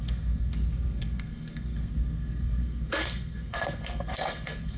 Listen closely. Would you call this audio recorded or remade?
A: remade